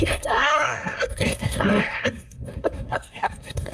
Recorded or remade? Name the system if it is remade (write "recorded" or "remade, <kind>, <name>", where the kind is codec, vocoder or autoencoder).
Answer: remade, codec, SNAC